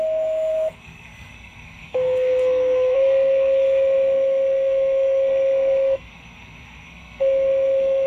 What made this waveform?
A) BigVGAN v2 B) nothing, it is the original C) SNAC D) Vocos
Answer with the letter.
C